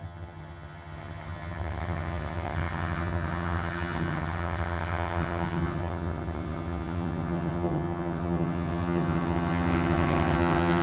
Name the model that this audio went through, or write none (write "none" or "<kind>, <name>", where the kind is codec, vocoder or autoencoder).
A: vocoder, HiFi-GAN